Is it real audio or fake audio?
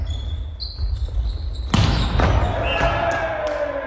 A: real